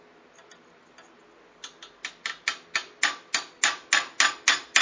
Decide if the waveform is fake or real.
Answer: real